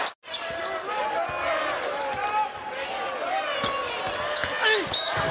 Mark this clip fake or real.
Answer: real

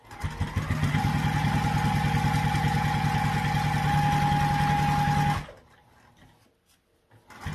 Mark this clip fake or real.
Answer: real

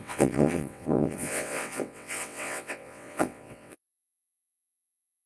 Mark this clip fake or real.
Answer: fake